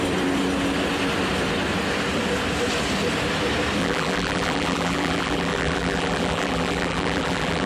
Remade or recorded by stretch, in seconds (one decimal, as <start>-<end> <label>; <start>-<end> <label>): 0.0-3.8 recorded; 3.8-7.7 remade